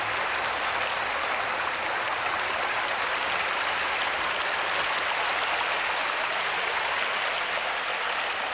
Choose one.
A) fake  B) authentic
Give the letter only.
B